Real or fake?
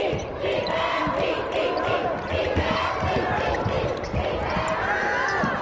real